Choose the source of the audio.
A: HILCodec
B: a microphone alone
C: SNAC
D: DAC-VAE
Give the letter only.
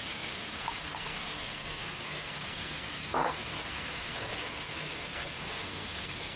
C